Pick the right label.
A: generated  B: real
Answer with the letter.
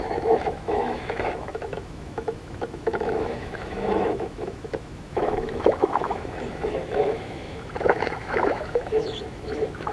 A